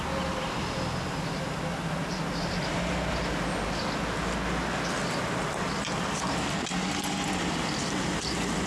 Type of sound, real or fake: real